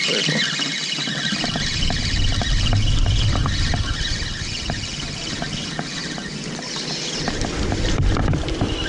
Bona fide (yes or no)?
yes